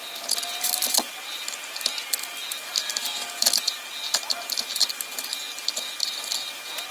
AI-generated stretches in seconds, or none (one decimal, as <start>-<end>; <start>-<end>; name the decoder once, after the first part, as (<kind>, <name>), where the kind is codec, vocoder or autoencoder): none

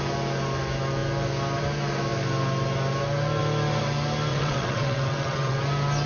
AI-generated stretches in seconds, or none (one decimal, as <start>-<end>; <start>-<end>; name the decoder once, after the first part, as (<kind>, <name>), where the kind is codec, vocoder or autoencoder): 4.3-5.6 (vocoder, WaveNeXt)

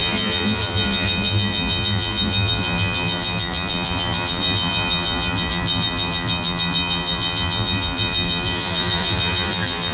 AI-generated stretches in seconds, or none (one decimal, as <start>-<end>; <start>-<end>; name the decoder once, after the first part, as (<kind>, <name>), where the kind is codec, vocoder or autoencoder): 0.0-9.9 (vocoder, BigVGAN v2)

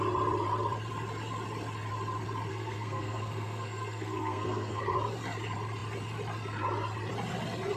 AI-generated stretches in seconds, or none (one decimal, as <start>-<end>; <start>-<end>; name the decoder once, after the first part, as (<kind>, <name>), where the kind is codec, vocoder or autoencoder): 2.5-4.8 (codec, SNAC)

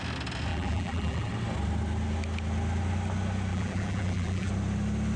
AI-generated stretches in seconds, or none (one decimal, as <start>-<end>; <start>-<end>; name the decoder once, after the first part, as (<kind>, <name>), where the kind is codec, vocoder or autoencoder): 0.5-1.3 (vocoder, BigVGAN v2); 3.5-4.5